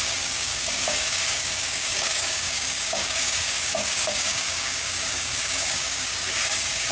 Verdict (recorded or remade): remade